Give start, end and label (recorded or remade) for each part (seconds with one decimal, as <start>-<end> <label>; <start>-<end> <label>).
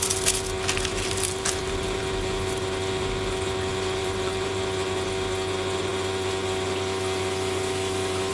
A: 0.0-0.9 recorded; 0.9-2.0 remade; 2.0-4.0 recorded; 4.0-4.6 remade; 4.6-8.3 recorded